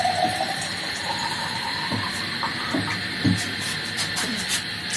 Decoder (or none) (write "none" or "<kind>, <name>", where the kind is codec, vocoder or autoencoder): none